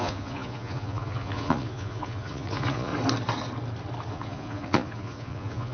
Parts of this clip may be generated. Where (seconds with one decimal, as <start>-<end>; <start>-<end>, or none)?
0.0-2.9; 4.1-5.7